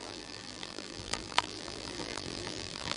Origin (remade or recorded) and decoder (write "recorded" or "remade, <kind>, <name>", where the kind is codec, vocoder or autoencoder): remade, vocoder, BigVGAN v2